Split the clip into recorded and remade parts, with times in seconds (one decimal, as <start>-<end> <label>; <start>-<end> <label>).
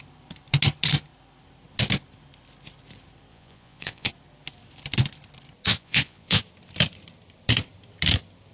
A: 0.0-3.3 recorded; 3.3-4.1 remade; 4.1-5.7 recorded; 5.7-6.4 remade; 6.4-8.5 recorded